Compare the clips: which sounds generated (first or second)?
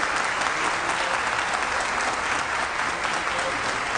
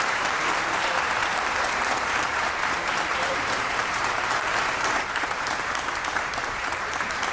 second